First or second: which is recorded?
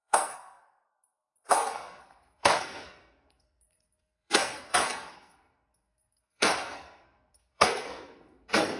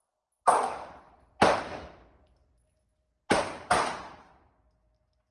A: second